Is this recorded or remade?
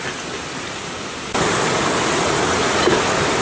recorded